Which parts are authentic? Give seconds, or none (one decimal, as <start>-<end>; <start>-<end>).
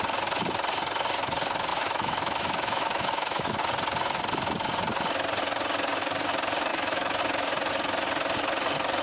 0.0-1.7; 3.6-6.7; 7.2-9.0